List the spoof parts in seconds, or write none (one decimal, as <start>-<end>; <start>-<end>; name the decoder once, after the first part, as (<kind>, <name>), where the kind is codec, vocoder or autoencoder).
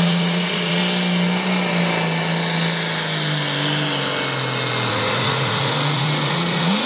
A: 0.0-0.8 (vocoder, Vocos); 4.9-6.9